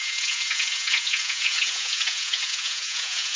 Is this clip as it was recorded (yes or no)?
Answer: no